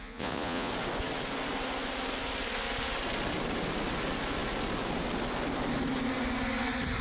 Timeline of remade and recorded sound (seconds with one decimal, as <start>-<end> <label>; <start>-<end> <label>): 0.0-0.7 remade; 0.7-7.0 recorded